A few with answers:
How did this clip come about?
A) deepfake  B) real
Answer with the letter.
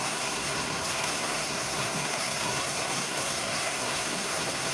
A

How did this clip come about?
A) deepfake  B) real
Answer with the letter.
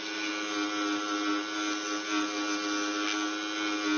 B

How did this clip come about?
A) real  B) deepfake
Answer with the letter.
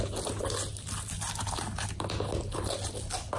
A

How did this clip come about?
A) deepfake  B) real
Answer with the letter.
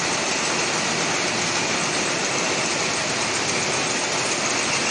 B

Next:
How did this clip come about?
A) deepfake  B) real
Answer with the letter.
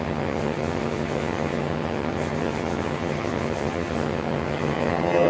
A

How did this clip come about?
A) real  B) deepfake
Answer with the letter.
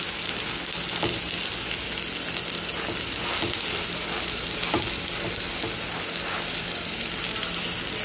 A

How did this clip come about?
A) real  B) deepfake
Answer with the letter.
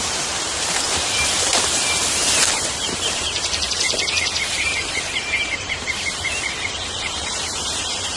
B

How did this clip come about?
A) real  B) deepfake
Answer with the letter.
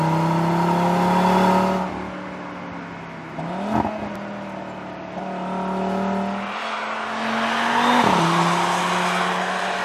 A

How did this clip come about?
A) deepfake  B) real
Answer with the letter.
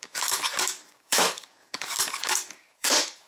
A